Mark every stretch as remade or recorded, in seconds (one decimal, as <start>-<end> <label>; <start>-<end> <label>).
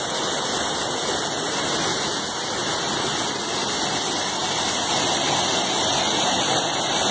0.0-7.1 recorded